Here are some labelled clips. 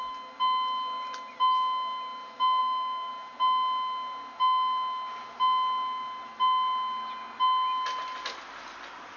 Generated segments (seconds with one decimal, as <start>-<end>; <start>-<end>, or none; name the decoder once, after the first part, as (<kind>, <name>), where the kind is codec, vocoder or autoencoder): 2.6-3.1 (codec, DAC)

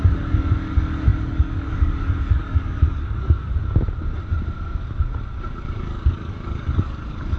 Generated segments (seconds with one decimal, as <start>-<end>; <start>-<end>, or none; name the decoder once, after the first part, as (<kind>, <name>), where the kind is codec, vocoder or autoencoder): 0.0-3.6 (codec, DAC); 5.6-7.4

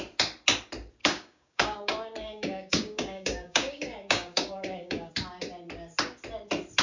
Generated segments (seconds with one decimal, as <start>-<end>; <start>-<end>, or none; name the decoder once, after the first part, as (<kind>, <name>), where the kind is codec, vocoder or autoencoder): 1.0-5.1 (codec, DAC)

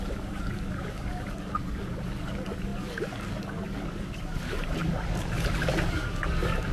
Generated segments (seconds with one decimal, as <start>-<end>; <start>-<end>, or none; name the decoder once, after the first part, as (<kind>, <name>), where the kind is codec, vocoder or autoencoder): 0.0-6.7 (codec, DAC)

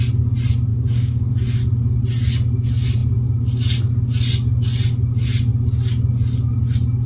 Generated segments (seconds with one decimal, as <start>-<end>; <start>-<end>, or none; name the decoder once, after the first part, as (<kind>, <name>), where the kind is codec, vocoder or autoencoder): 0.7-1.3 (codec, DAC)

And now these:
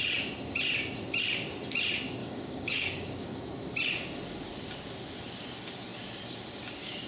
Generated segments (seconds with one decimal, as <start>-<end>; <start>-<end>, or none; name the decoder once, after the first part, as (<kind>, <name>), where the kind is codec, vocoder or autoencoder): 2.2-3.4 (codec, DAC)

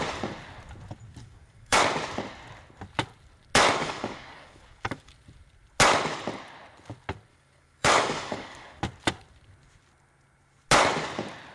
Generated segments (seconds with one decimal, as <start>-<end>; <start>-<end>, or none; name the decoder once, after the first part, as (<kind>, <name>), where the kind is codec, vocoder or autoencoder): 1.2-1.8 (codec, DAC); 3.8-5.1; 7.3-8.8

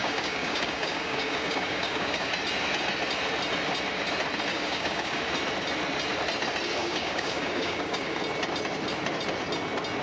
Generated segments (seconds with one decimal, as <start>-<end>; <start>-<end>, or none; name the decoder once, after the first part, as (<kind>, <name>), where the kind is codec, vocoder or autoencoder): 0.0-2.3 (codec, DAC); 4.5-5.2; 6.8-8.2